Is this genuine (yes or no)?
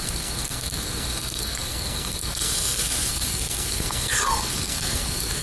no